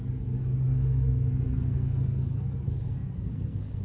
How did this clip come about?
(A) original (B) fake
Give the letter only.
B